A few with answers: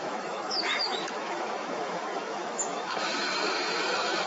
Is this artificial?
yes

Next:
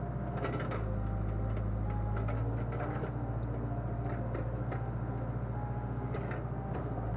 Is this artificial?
no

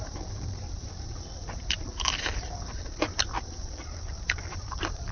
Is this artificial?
yes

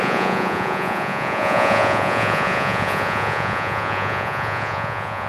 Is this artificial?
yes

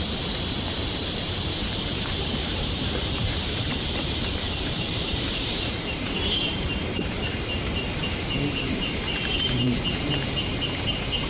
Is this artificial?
yes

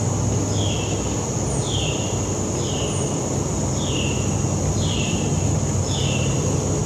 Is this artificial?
no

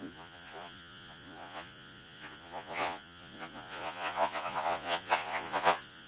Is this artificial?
yes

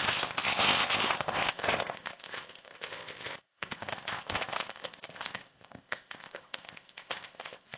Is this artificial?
yes